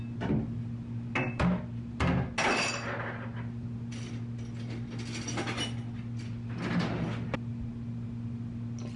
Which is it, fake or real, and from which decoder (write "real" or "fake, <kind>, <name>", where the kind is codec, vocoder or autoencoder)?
real